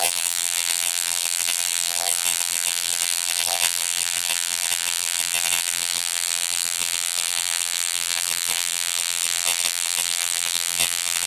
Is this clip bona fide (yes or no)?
no